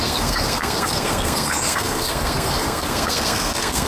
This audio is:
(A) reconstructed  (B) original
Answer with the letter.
A